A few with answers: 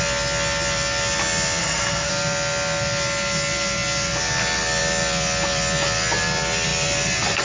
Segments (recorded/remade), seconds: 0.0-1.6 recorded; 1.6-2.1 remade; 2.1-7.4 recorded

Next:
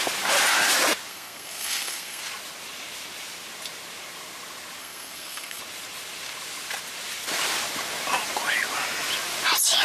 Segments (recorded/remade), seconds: 0.0-1.1 recorded; 1.1-2.2 remade; 2.2-4.8 recorded; 4.8-5.6 remade; 5.6-9.8 recorded

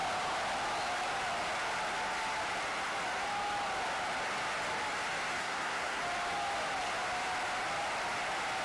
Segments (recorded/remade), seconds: 0.0-5.4 recorded; 5.4-6.0 remade; 6.0-8.6 recorded

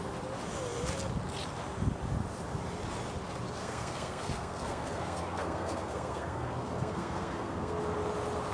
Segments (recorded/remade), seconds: 0.0-3.6 recorded; 3.6-7.8 remade; 7.8-8.5 recorded

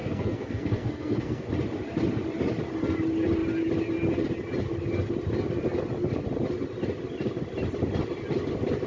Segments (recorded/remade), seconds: 0.0-1.5 remade; 1.5-8.9 recorded

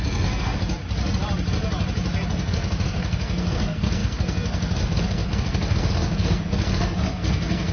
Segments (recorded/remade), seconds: 0.0-0.6 remade; 0.6-2.3 recorded; 2.3-7.7 remade